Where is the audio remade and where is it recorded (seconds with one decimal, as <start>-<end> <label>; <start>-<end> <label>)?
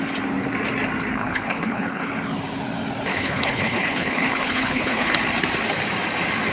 0.0-1.1 recorded; 1.1-2.1 remade; 2.1-3.1 recorded; 3.1-5.1 remade; 5.1-6.5 recorded